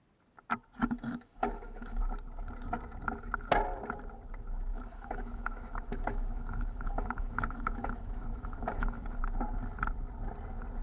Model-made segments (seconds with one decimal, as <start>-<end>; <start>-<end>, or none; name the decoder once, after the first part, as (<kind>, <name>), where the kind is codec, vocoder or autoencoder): 0.8-2.0 (autoencoder, DAC-VAE); 4.7-9.2